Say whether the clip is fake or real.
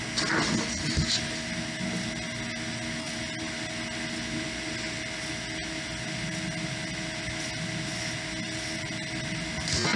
real